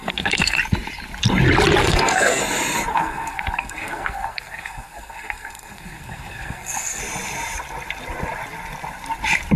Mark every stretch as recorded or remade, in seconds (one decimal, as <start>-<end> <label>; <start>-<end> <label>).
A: 0.0-0.6 remade; 0.6-1.8 recorded; 1.8-2.4 remade; 2.4-2.9 recorded; 2.9-7.0 remade; 7.0-9.6 recorded